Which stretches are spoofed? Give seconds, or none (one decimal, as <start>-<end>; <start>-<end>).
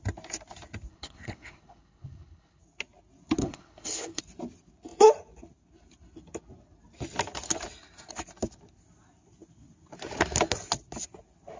0.9-2.6; 3.4-4.2